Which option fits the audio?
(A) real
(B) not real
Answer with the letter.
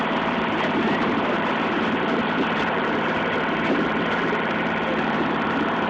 B